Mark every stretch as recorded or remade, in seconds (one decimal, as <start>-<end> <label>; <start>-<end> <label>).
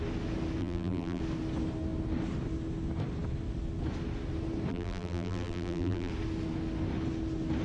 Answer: 0.0-0.6 recorded; 0.6-1.2 remade; 1.2-4.7 recorded; 4.7-6.1 remade; 6.1-7.6 recorded